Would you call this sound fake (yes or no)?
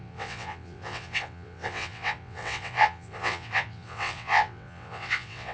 yes